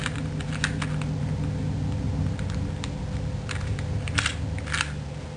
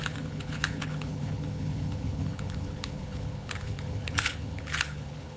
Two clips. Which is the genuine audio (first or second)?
first